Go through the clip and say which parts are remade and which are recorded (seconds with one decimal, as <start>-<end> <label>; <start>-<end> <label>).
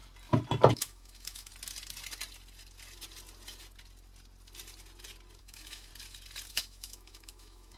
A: 0.0-0.7 recorded; 0.7-1.5 remade; 1.5-5.4 recorded; 5.4-5.9 remade; 5.9-6.5 recorded; 6.5-7.8 remade